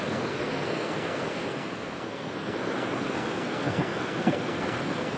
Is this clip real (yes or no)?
no